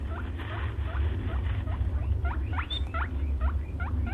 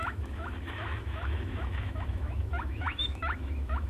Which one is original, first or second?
first